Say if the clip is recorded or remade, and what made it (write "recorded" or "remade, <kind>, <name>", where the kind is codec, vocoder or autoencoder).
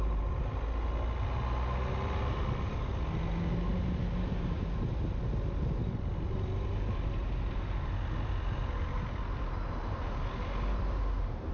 recorded